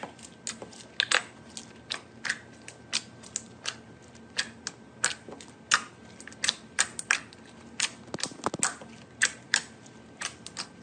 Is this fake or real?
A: real